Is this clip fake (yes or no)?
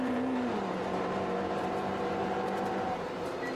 yes